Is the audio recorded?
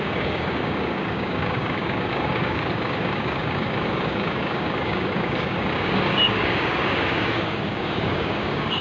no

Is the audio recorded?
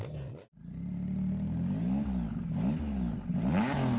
yes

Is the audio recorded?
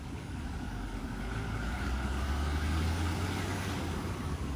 no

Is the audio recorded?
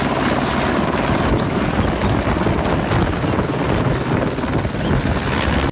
yes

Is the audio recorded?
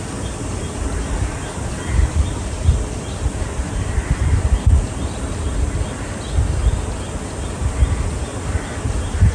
yes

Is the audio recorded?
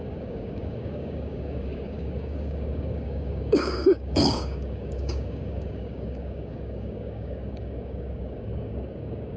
no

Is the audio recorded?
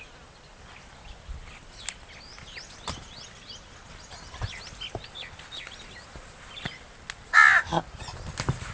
yes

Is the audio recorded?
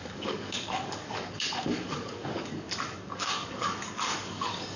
no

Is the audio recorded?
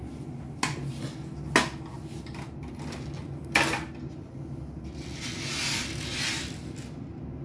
yes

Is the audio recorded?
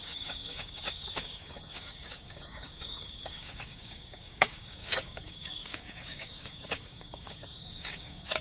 no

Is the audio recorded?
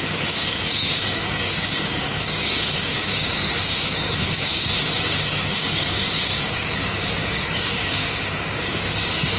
no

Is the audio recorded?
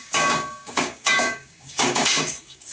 no